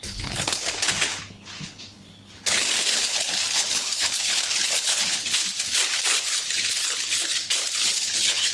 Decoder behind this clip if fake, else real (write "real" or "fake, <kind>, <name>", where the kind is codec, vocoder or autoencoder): fake, codec, HILCodec